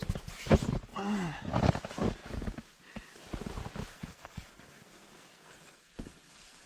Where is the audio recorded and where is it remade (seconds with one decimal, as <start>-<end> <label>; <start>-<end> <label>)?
0.0-3.9 recorded; 3.9-6.7 remade